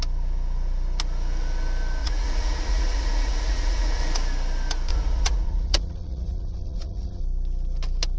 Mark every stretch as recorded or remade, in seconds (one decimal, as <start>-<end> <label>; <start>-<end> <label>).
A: 0.0-2.0 recorded; 2.0-4.0 remade; 4.0-4.9 recorded; 4.9-7.2 remade; 7.2-8.2 recorded